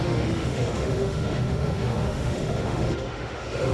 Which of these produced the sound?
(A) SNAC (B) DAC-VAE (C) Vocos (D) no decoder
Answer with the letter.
B